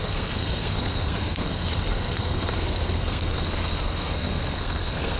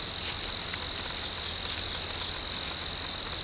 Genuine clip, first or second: second